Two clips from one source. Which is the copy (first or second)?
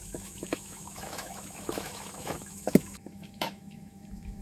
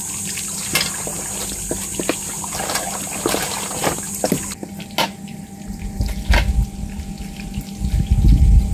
first